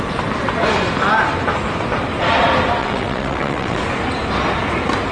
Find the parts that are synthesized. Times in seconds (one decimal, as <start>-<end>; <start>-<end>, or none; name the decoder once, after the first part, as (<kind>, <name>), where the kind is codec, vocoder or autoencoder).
2.8-3.8 (vocoder, WaveNeXt)